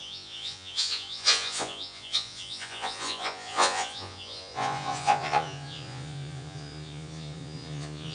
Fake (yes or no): yes